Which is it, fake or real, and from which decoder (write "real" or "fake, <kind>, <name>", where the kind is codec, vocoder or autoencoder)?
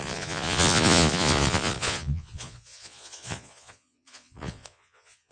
fake, vocoder, Vocos